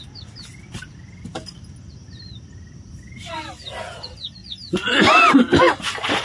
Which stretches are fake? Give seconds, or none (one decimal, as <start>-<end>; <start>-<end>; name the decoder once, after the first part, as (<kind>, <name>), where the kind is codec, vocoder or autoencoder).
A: none